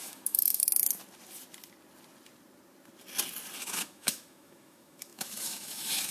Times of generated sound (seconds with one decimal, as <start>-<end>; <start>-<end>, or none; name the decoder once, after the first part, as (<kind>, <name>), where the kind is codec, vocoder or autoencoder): 0.0-0.6 (autoencoder, DAC-VAE); 3.6-6.1